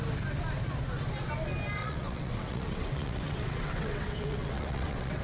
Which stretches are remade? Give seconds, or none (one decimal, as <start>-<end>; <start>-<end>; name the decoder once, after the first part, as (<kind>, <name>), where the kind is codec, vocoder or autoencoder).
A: 1.8-5.2 (vocoder, WaveNeXt)